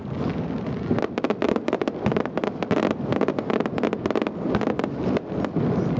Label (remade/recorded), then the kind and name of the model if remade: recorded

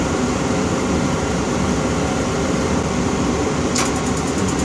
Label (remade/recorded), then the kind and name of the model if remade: recorded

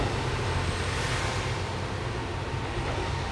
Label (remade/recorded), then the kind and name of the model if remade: recorded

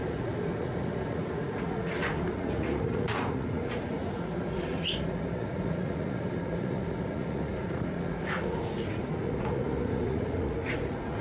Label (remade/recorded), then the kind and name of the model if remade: remade, vocoder, Vocos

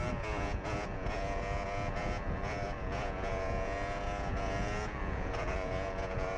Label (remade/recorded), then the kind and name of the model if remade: remade, vocoder, Vocos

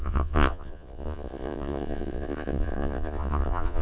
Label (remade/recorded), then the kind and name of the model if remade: remade, vocoder, Vocos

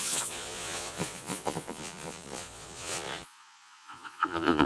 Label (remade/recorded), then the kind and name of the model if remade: remade, vocoder, Vocos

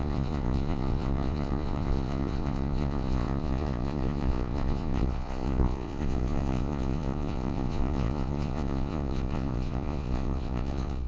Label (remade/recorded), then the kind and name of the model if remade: remade, vocoder, Vocos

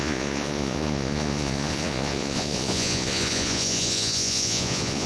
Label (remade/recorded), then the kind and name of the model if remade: remade, vocoder, Vocos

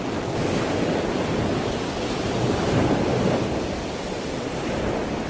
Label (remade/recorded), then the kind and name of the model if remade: recorded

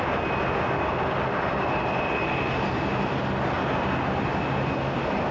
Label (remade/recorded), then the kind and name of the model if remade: recorded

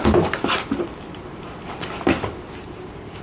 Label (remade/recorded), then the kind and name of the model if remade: recorded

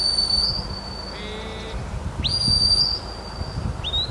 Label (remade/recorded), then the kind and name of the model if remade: recorded